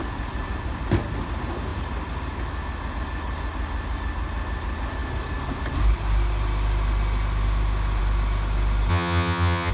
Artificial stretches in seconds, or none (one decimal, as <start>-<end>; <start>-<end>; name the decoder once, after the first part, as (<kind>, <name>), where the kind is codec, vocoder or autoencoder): 8.9-9.7 (vocoder, HiFi-GAN)